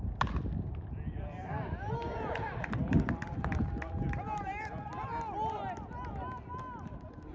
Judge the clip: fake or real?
real